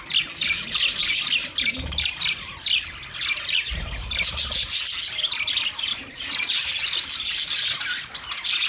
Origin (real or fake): real